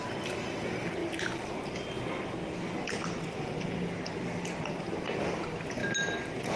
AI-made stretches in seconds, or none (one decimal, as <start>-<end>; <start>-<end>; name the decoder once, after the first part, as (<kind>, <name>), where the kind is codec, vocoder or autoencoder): none